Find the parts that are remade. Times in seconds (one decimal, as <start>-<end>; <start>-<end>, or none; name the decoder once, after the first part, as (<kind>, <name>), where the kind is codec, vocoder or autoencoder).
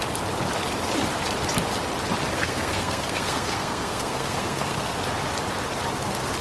2.3-5.0 (codec, SNAC)